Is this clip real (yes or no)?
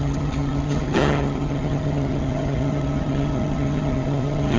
no